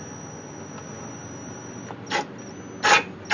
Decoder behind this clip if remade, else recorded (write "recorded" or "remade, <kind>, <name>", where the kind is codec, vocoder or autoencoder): recorded